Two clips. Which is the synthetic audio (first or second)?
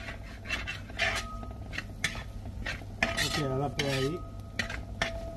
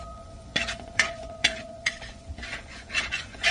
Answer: second